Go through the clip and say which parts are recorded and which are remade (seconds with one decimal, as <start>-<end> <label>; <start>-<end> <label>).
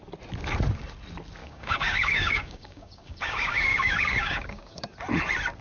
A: 0.0-1.4 recorded; 1.4-4.8 remade; 4.8-5.6 recorded